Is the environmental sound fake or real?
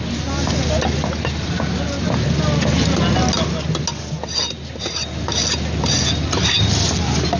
real